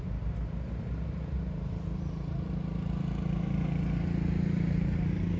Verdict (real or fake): real